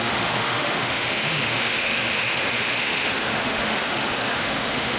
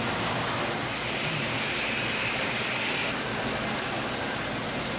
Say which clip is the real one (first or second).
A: second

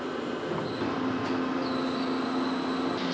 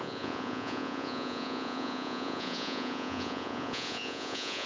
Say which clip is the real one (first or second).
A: first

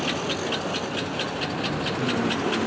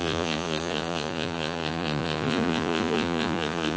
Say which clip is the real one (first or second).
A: first